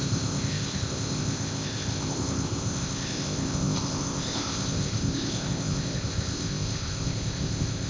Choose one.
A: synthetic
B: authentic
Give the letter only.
A